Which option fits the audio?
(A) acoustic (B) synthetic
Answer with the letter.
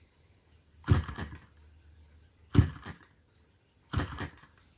A